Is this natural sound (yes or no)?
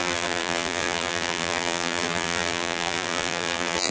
no